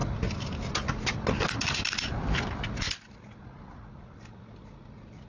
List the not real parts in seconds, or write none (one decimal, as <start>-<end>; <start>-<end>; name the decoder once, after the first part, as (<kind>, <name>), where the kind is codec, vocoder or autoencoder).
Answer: none